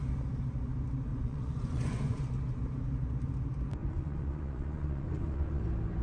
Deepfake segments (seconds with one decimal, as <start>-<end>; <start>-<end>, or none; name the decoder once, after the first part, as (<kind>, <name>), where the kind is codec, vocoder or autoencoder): 1.1-2.2 (vocoder, Vocos); 3.8-5.6